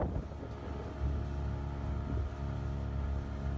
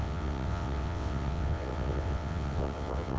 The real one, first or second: first